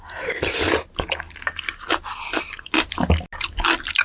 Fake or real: real